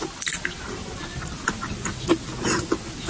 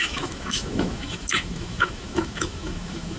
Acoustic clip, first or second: first